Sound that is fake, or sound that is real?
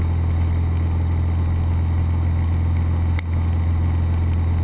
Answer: real